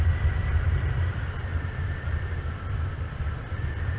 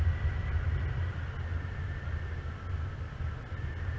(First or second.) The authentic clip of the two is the second